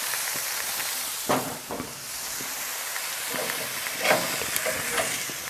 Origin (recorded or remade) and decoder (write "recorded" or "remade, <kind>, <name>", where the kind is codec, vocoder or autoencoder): remade, vocoder, BigVGAN v2